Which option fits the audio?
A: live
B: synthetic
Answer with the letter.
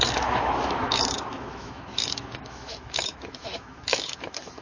B